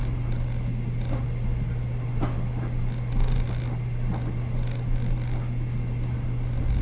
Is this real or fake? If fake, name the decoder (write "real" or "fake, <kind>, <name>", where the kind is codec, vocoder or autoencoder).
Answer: real